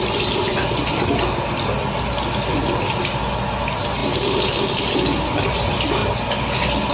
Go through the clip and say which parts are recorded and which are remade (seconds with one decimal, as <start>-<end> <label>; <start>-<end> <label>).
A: 0.0-6.9 recorded

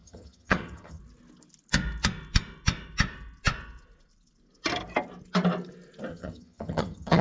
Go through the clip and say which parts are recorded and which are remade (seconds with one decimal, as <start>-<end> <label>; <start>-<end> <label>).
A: 0.0-1.0 remade; 1.0-6.1 recorded; 6.1-7.2 remade

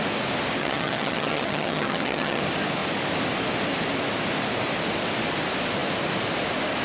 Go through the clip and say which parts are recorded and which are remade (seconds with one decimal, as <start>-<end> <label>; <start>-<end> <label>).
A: 0.0-0.6 recorded; 0.6-2.4 remade; 2.4-6.8 recorded

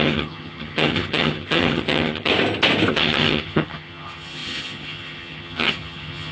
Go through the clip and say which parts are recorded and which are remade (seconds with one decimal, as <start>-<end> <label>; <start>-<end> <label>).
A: 0.0-2.3 remade; 2.3-2.9 recorded; 2.9-6.3 remade

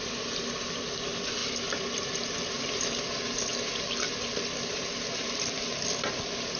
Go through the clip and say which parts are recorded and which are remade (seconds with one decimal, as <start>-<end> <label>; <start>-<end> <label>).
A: 0.0-6.6 recorded

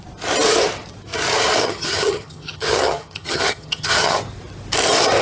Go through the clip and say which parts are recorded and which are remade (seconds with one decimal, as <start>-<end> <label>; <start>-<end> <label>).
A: 0.0-1.6 recorded; 1.6-4.2 remade; 4.2-5.2 recorded

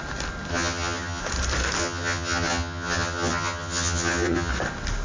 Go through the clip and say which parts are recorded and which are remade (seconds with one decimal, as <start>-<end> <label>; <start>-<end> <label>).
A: 0.0-0.5 recorded; 0.5-1.2 remade; 1.2-1.8 recorded; 1.8-4.5 remade; 4.5-5.0 recorded

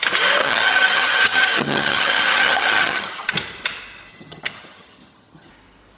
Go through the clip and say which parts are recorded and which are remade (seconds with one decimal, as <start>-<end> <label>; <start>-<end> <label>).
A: 0.0-0.4 recorded; 0.4-3.3 remade; 3.3-4.1 recorded; 4.1-5.5 remade; 5.5-6.0 recorded